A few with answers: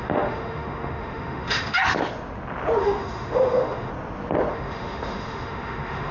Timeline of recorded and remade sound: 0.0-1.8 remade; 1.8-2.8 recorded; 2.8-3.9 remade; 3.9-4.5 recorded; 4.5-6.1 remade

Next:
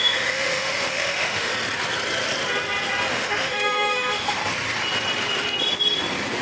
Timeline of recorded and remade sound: 0.0-1.5 remade; 1.5-3.1 recorded; 3.1-4.4 remade; 4.4-6.4 recorded

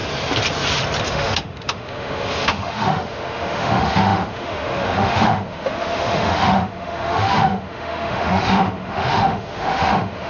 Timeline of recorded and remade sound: 0.0-1.0 recorded; 1.0-10.3 remade

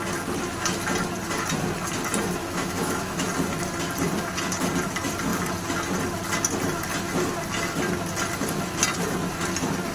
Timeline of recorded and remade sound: 0.0-2.4 recorded; 2.4-3.3 remade; 3.3-9.9 recorded

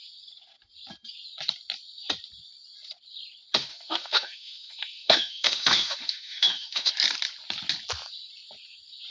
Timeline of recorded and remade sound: 0.0-3.7 recorded; 3.7-6.9 remade; 6.9-9.1 recorded

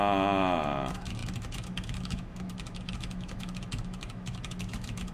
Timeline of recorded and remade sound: 0.0-5.1 remade

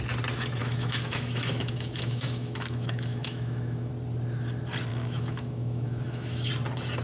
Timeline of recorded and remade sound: 0.0-0.6 recorded; 0.6-3.9 remade; 3.9-4.9 recorded; 4.9-6.5 remade; 6.5-7.0 recorded